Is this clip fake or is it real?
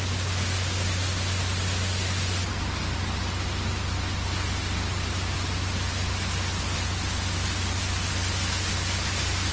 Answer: real